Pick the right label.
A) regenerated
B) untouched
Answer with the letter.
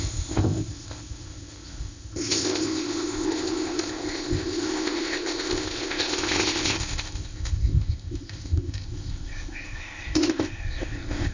A